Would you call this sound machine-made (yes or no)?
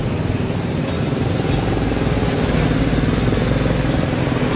no